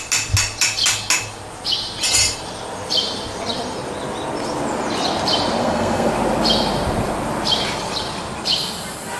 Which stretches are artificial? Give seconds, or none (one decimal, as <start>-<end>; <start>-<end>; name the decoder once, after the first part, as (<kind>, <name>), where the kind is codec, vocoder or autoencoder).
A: 5.6-6.1 (codec, SNAC)